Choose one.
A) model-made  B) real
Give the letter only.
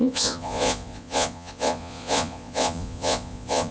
A